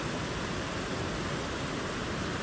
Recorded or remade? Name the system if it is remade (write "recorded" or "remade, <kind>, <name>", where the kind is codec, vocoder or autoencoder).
recorded